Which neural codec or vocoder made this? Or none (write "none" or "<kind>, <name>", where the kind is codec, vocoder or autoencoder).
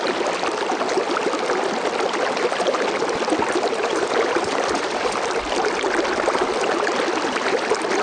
none